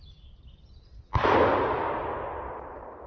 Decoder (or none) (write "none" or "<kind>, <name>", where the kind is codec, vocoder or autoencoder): none